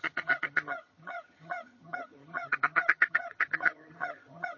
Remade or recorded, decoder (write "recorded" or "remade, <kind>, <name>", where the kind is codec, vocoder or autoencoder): remade, vocoder, HiFi-GAN